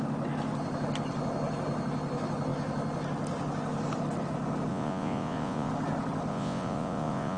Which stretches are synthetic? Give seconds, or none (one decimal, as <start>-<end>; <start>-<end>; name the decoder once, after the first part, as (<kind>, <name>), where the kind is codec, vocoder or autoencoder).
4.7-5.7 (vocoder, Vocos); 6.3-7.4